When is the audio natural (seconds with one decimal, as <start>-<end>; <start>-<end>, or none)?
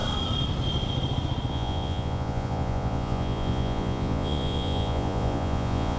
0.0-1.5